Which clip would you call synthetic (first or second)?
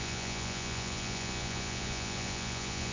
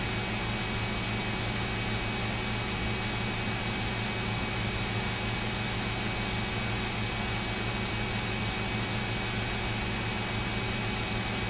first